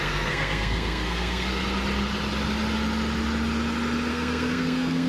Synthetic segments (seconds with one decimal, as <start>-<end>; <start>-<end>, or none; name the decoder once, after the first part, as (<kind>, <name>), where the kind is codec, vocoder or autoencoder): 0.0-1.6 (codec, SNAC); 4.1-5.1